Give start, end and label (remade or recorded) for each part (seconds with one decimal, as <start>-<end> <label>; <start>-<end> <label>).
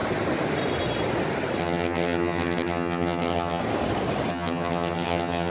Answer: 0.0-1.6 recorded; 1.6-3.6 remade; 3.6-4.3 recorded; 4.3-5.5 remade